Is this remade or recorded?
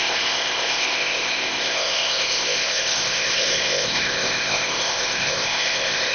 remade